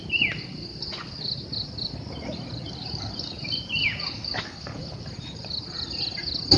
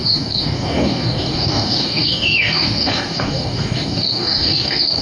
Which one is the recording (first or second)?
first